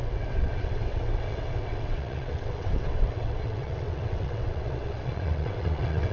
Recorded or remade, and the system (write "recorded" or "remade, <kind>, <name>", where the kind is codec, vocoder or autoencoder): remade, vocoder, WaveNeXt